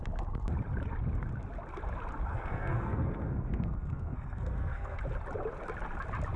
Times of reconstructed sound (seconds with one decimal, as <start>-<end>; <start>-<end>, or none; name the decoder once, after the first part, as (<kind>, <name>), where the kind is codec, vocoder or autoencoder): 2.3-5.0 (codec, SNAC)